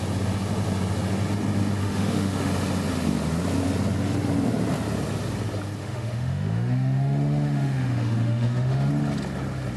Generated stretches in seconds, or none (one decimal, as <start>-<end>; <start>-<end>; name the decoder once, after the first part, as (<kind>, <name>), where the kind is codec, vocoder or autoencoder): 1.8-2.5 (autoencoder, DAC-VAE); 5.8-8.9